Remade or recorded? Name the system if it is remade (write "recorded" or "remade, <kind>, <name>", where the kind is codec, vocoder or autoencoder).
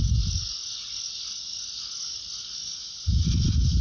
recorded